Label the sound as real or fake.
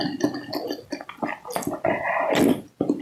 real